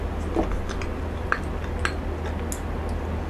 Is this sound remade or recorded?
recorded